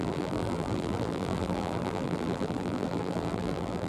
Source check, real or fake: fake